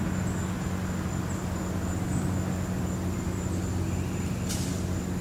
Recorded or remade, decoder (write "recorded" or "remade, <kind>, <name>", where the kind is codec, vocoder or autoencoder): recorded